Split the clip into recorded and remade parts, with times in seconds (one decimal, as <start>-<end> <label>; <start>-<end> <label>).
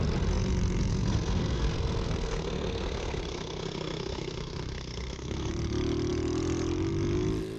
0.0-0.9 recorded; 0.9-5.5 remade; 5.5-7.6 recorded